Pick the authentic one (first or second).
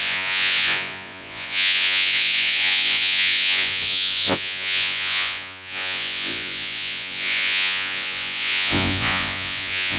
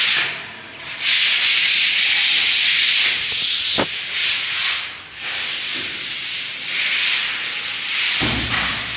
second